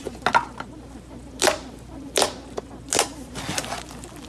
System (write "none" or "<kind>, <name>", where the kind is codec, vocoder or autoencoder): none